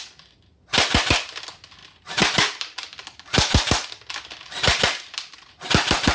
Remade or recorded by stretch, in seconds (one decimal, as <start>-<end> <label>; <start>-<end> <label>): 0.0-6.1 recorded